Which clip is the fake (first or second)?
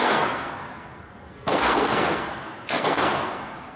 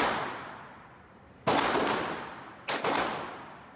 first